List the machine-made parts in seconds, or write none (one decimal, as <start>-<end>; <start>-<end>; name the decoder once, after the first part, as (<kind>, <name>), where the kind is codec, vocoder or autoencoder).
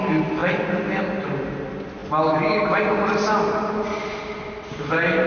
0.4-1.0 (vocoder, BigVGAN v2)